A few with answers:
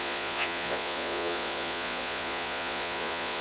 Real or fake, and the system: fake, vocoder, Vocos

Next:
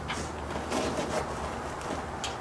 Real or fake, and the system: real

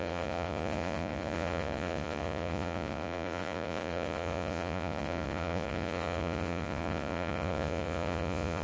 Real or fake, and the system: fake, vocoder, Vocos